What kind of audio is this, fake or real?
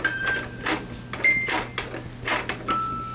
real